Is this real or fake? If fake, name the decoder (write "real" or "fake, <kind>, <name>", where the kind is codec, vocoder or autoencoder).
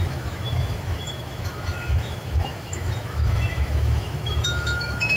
fake, autoencoder, DAC-VAE